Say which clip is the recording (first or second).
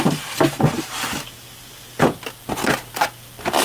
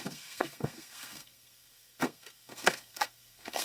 first